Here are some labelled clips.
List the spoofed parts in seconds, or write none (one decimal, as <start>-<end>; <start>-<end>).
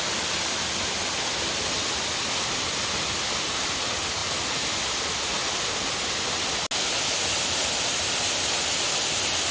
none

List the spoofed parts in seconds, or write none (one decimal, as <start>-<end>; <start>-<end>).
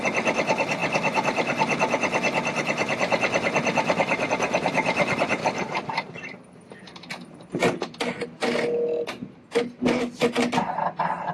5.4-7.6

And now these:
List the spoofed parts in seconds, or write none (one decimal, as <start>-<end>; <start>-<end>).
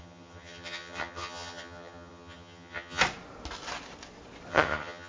0.0-3.0; 4.5-5.1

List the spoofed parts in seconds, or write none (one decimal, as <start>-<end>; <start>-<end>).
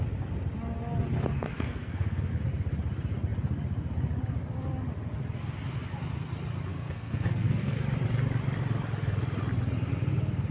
1.5-2.3; 6.7-7.8